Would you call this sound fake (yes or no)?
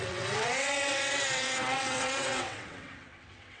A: yes